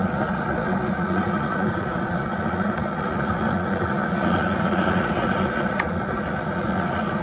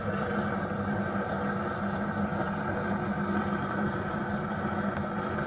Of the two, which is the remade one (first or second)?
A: first